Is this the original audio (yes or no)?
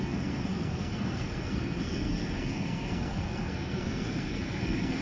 no